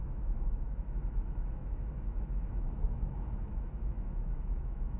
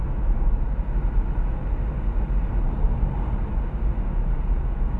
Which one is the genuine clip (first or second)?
second